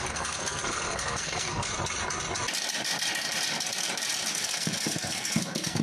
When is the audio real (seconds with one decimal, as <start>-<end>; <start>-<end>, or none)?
1.7-4.3